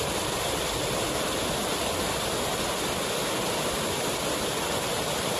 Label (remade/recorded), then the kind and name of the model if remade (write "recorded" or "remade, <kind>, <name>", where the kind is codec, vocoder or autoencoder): recorded